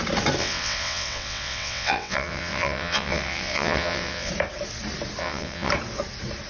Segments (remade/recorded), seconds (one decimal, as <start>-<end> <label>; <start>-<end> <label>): 0.0-0.4 recorded; 0.4-4.3 remade; 4.3-5.2 recorded; 5.2-5.7 remade; 5.7-6.5 recorded